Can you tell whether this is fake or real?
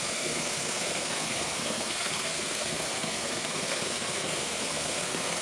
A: fake